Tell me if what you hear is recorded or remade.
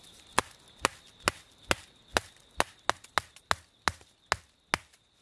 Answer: recorded